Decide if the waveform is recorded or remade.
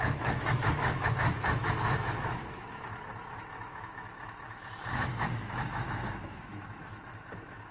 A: remade